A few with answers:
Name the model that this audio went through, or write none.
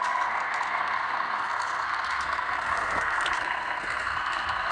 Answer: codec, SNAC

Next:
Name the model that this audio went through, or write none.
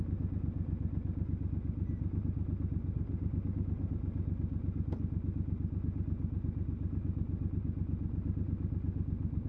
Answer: none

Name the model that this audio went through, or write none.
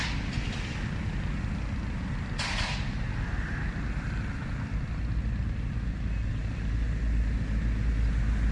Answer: none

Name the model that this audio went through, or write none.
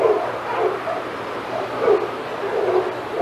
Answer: none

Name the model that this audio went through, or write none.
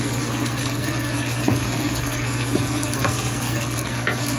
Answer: codec, SNAC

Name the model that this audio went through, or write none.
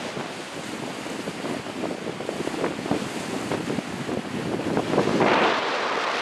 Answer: none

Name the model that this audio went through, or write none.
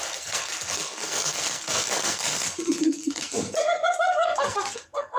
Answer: codec, SNAC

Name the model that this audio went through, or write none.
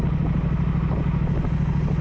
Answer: none